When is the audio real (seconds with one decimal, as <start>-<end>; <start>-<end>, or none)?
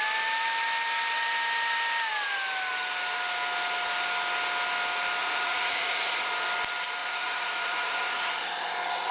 0.0-5.2; 6.3-7.0; 8.3-9.1